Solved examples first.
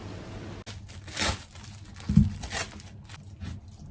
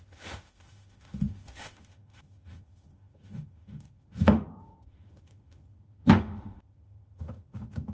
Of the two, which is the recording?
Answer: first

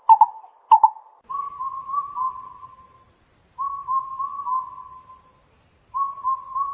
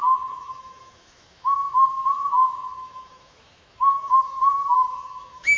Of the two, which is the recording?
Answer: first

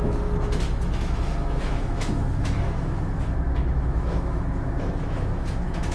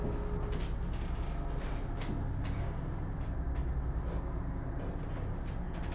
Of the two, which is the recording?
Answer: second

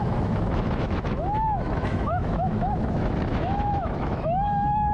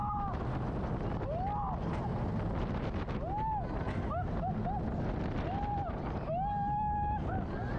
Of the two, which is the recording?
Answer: second